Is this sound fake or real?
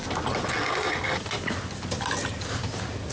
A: real